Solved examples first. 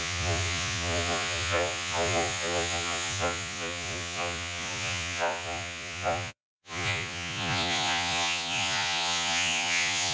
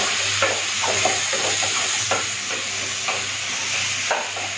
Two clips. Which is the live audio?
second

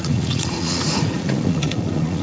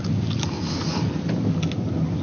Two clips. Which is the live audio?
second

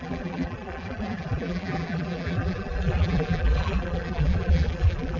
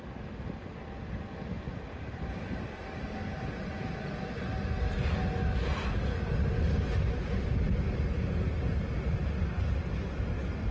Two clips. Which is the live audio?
second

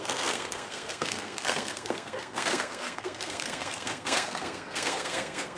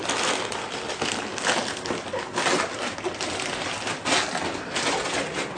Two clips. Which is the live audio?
second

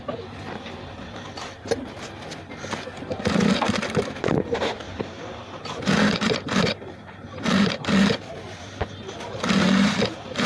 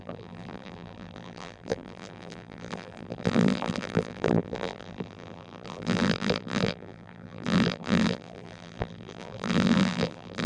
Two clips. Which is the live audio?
first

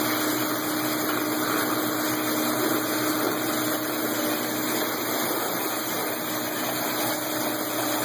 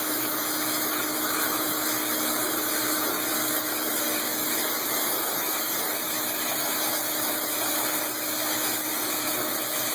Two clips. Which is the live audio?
first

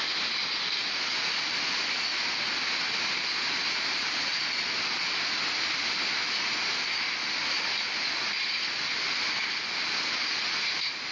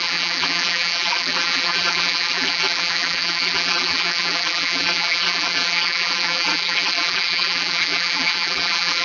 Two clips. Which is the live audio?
first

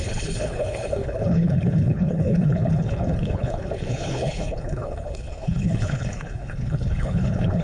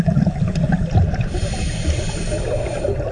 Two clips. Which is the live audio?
second